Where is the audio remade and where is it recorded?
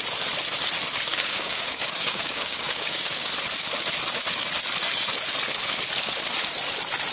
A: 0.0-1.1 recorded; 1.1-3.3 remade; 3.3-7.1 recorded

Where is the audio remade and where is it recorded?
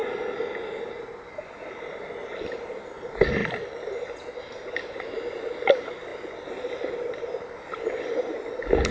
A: 0.0-8.9 recorded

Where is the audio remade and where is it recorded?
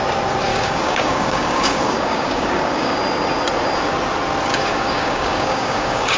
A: 0.0-0.5 recorded; 0.5-3.0 remade; 3.0-4.5 recorded; 4.5-6.2 remade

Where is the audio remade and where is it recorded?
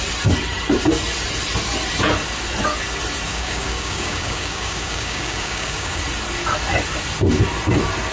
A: 0.0-3.3 recorded; 3.3-6.0 remade; 6.0-8.1 recorded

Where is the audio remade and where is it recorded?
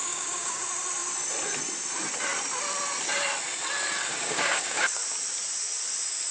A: 0.0-0.6 remade; 0.6-4.1 recorded; 4.1-5.0 remade; 5.0-6.3 recorded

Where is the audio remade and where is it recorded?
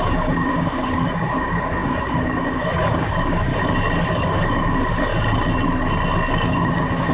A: 0.0-3.5 remade; 3.5-4.1 recorded; 4.1-5.1 remade; 5.1-6.3 recorded; 6.3-7.1 remade